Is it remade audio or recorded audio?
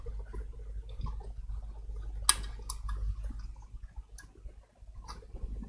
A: recorded